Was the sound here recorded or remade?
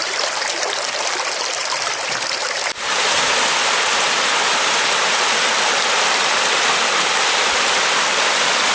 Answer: remade